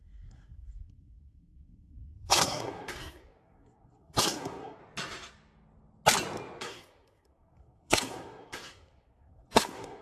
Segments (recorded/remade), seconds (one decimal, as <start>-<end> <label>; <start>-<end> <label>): 0.0-4.8 remade; 4.8-6.6 recorded; 6.6-10.0 remade